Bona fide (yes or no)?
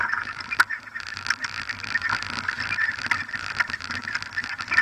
yes